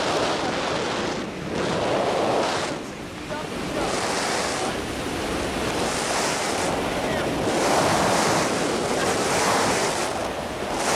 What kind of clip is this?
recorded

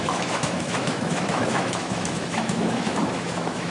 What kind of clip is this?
remade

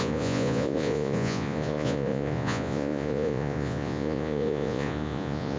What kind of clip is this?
remade